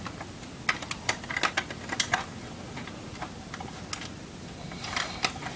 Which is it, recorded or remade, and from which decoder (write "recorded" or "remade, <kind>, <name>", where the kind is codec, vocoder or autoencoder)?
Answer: recorded